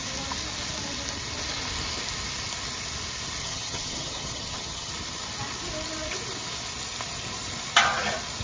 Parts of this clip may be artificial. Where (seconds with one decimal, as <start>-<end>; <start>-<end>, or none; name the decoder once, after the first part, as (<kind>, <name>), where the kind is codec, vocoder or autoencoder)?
3.4-4.9 (vocoder, HiFi-GAN)